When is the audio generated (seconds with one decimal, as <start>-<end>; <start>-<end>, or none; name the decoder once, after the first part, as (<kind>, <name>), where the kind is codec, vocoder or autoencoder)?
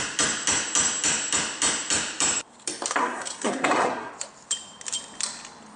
3.0-4.1 (codec, SNAC)